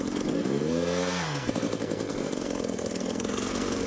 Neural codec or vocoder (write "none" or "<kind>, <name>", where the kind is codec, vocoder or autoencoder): codec, SNAC